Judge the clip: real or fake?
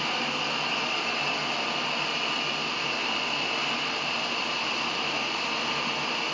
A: real